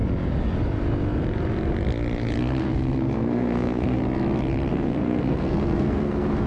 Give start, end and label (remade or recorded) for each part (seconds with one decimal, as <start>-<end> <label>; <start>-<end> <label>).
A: 0.0-2.6 recorded; 2.6-4.0 remade; 4.0-4.7 recorded; 4.7-6.5 remade